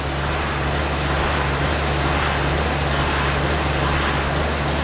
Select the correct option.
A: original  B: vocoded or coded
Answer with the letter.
A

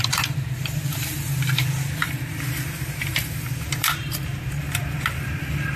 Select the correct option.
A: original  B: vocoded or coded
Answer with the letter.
B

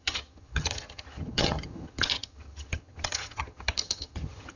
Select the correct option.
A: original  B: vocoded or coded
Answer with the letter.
B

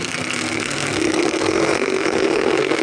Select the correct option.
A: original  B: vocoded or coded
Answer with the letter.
B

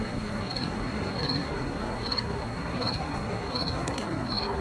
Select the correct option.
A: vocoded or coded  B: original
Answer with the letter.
A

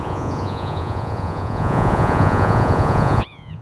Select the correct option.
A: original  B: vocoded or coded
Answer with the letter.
B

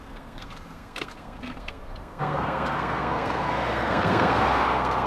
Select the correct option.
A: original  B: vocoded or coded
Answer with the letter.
B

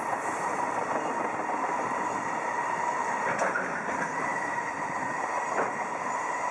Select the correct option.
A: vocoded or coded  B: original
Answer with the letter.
A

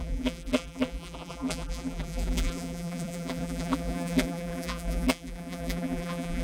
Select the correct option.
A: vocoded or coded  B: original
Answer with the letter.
A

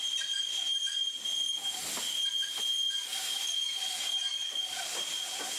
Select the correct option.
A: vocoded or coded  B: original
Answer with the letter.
B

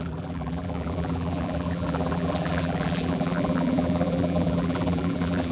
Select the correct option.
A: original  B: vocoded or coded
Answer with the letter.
B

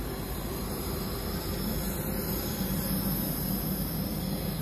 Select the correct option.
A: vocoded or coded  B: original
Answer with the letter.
B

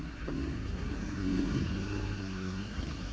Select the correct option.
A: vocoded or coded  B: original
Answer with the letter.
A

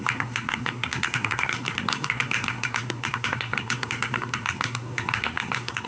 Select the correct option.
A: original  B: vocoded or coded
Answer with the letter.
B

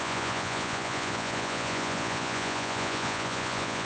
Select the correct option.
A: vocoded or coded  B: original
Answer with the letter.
A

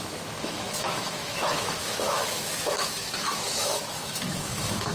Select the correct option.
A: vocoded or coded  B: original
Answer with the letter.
A